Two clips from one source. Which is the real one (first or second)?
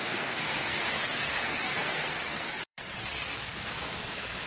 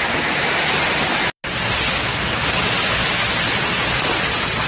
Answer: second